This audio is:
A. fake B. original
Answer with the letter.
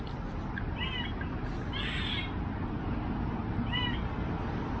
B